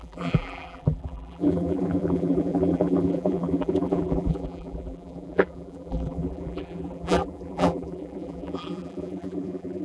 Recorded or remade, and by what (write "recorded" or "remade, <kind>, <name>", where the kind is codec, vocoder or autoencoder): remade, vocoder, BigVGAN v2